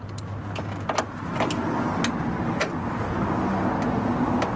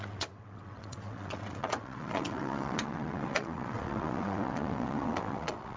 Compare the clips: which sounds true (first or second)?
first